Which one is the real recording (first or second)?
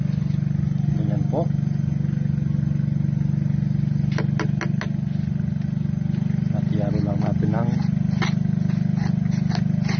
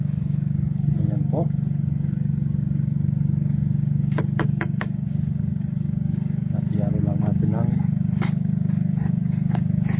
first